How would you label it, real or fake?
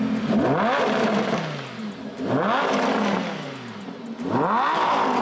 real